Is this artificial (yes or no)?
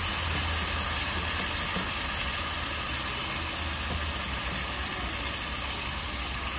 no